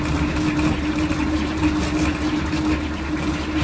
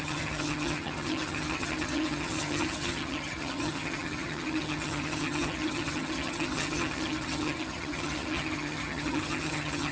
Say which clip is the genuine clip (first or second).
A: first